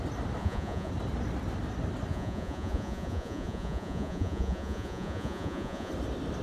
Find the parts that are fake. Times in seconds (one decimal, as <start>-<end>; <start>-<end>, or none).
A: 0.4-0.9; 2.1-5.9